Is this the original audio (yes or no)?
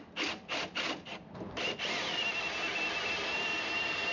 yes